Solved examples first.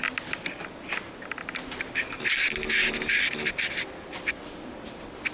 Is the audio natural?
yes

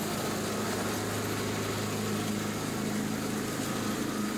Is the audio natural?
yes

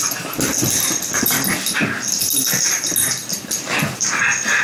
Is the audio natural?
yes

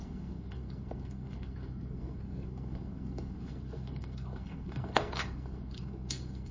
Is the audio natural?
no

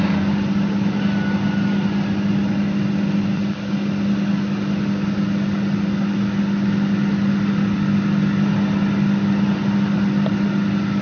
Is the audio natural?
yes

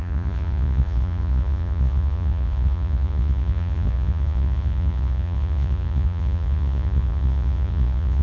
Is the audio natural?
no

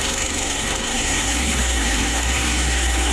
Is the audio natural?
no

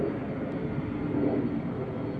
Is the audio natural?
yes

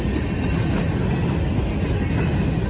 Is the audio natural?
yes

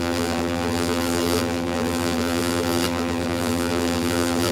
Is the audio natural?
no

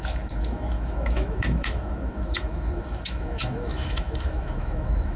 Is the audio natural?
no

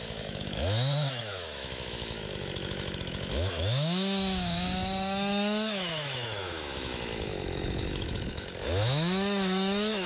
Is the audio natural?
no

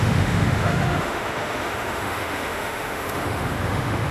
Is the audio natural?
no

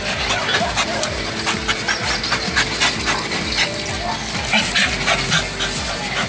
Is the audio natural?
yes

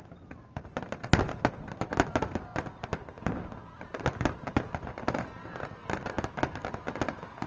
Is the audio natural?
yes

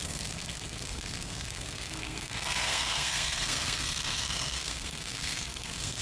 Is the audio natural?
no